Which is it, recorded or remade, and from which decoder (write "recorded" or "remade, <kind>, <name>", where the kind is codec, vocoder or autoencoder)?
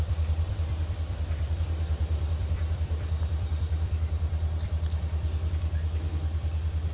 remade, vocoder, BigVGAN v2